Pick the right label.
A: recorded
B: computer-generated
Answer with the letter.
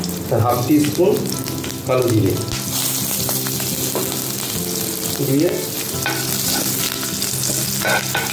A